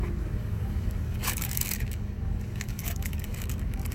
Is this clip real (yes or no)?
no